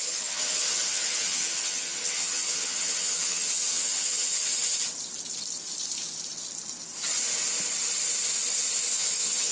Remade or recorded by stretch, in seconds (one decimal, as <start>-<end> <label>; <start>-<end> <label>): 0.0-4.4 remade; 4.4-8.9 recorded; 8.9-9.5 remade